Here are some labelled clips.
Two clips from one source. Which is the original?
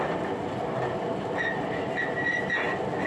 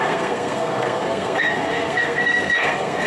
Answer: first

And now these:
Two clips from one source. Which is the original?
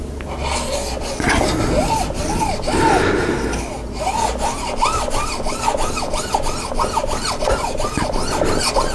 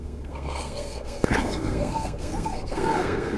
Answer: first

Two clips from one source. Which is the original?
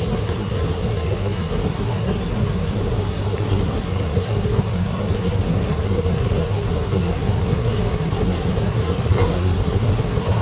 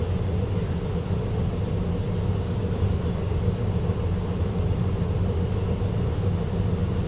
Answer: second